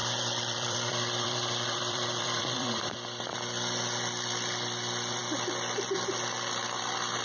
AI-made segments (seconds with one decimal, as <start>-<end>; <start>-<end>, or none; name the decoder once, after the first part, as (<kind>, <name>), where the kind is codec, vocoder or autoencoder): 0.0-3.2 (vocoder, BigVGAN v2)

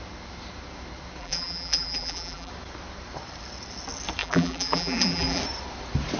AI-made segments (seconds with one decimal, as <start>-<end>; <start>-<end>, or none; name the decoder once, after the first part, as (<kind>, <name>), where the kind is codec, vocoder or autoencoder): 1.2-2.5 (vocoder, BigVGAN v2); 4.2-5.4